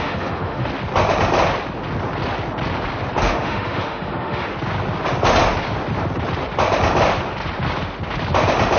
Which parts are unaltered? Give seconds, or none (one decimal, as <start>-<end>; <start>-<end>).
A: 0.7-3.2; 4.5-8.8